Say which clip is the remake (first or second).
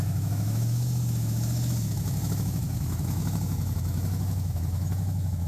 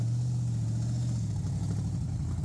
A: first